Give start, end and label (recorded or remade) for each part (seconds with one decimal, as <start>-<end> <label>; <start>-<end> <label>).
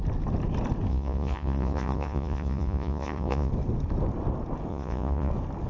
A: 0.0-0.9 recorded; 0.9-3.5 remade; 3.5-4.7 recorded; 4.7-5.3 remade; 5.3-5.7 recorded